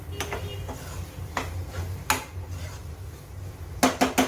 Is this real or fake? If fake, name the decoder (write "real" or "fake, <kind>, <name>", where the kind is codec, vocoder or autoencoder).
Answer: real